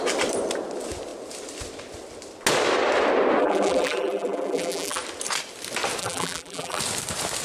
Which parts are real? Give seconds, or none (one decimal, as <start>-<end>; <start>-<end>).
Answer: 0.0-3.4; 5.0-6.0; 6.8-7.4